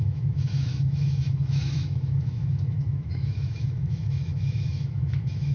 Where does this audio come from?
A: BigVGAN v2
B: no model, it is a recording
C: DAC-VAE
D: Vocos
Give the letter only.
C